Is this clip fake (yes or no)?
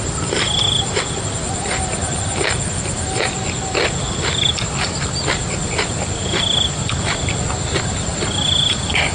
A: no